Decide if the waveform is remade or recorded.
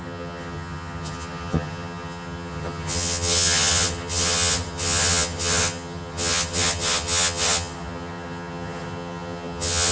remade